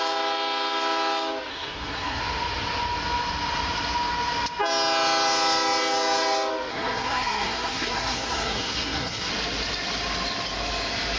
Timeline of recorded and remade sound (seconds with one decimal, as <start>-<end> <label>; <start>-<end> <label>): 0.0-1.5 recorded; 1.5-2.2 remade; 2.2-6.7 recorded; 6.7-9.3 remade; 9.3-11.2 recorded